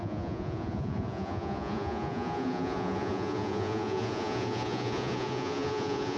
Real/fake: fake